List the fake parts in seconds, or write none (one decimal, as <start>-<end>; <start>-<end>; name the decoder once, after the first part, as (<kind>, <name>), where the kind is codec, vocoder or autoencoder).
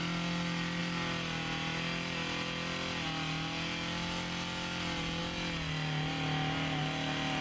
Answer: none